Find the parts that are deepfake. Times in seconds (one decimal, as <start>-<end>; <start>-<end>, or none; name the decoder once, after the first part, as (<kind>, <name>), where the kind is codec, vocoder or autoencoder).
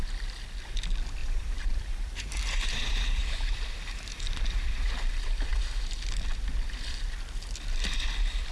1.2-5.1 (vocoder, BigVGAN v2)